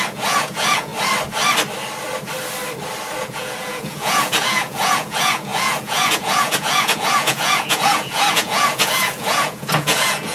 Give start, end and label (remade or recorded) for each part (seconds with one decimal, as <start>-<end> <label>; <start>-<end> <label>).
0.0-0.9 remade; 0.9-3.2 recorded; 3.2-10.3 remade